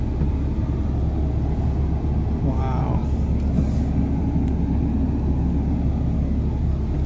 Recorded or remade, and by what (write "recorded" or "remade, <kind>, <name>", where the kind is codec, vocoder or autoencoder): recorded